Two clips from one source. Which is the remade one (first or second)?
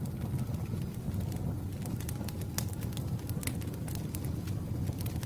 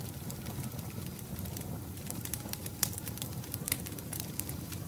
second